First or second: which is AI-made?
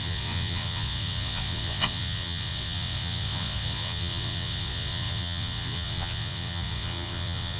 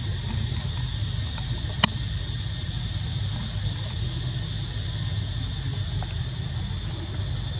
first